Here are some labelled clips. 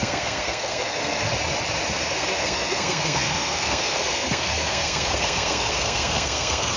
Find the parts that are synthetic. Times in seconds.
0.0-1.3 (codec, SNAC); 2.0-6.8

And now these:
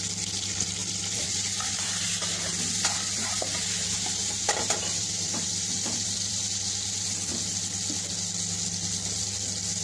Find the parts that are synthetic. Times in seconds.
0.8-2.0 (vocoder, BigVGAN v2); 5.0-6.4

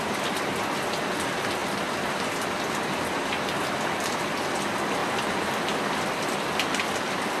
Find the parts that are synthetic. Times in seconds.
none

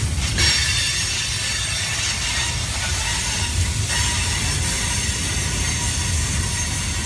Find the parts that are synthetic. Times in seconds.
none

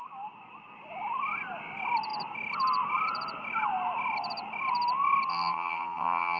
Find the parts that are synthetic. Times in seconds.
5.3-6.4 (vocoder, HiFi-GAN)

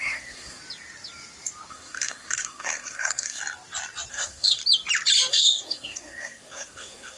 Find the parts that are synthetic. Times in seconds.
0.0-0.6 (codec, SNAC); 1.7-3.4; 4.1-4.6; 5.3-7.2

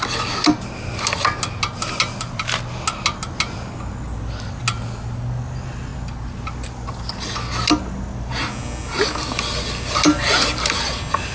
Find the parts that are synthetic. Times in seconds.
none

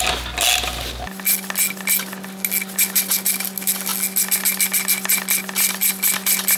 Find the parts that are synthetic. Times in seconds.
none